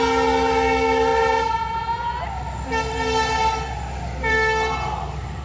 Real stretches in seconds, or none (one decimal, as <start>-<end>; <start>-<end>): 0.0-5.4